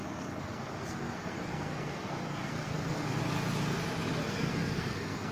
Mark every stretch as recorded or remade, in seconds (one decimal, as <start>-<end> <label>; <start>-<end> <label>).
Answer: 0.0-3.2 remade; 3.2-4.2 recorded; 4.2-5.3 remade